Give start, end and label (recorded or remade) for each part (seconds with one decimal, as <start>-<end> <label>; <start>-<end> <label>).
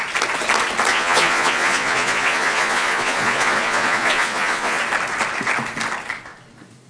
0.0-0.9 recorded; 0.9-4.8 remade; 4.8-6.9 recorded